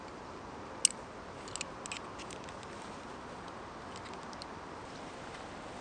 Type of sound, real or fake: real